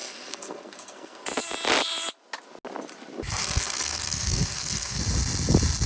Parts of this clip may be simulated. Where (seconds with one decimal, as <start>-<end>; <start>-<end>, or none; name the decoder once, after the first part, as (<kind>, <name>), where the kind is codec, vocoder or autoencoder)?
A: 0.0-1.2 (codec, SNAC); 3.4-5.0